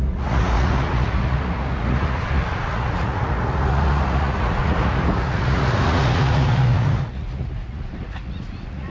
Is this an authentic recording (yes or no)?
no